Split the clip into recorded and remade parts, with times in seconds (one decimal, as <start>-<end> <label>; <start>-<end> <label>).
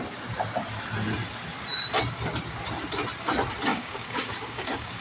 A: 0.0-3.7 recorded; 3.7-5.0 remade